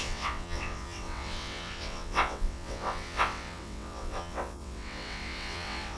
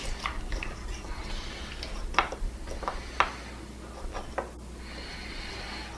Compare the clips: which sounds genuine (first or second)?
second